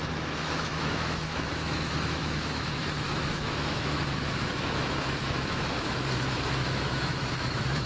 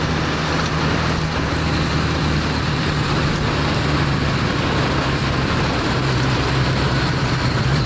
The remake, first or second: first